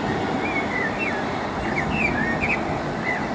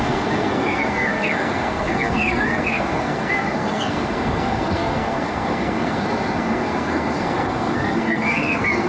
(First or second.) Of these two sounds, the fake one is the second